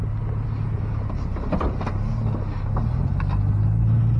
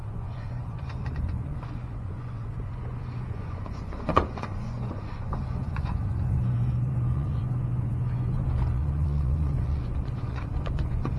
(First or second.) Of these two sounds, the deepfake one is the second